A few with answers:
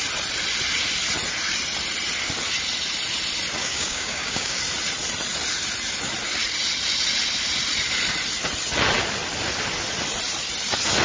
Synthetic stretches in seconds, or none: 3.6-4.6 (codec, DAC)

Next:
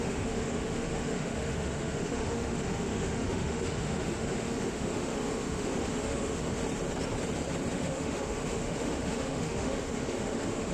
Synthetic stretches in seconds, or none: 0.0-6.6 (autoencoder, DAC-VAE); 7.7-10.7

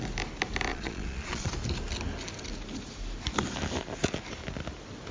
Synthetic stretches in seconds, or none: 0.7-1.5 (vocoder, Vocos)

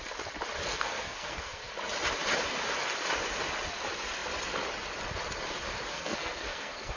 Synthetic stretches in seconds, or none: 0.7-1.7 (codec, SNAC); 5.9-7.0

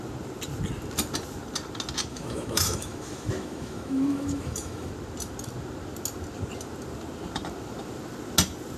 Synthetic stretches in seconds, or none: 2.1-4.9 (autoencoder, DAC-VAE)